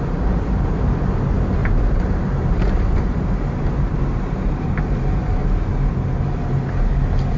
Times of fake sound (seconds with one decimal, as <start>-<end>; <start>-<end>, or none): 1.6-4.8